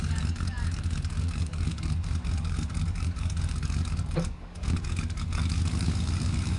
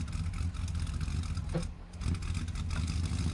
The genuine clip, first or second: second